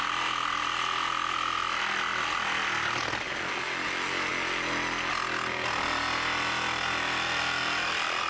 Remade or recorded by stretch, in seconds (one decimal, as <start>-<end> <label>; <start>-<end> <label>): 0.0-8.3 recorded